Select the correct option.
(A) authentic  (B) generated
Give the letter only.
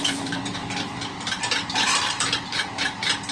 B